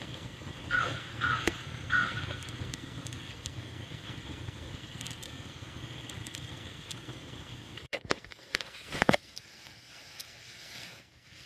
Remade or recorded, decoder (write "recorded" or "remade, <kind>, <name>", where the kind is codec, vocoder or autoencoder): remade, codec, SNAC